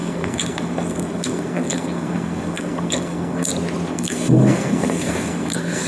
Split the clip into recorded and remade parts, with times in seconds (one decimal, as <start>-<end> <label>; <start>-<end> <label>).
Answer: 0.0-3.5 remade; 3.5-3.9 recorded; 3.9-5.9 remade